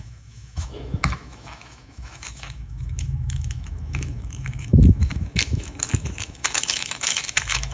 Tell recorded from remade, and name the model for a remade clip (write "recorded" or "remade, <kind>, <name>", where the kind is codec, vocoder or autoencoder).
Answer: remade, autoencoder, DAC-VAE